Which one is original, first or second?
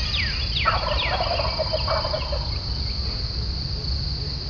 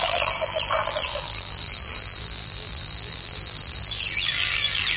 first